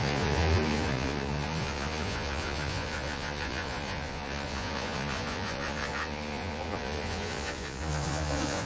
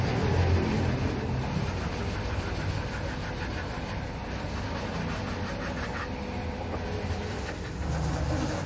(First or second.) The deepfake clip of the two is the first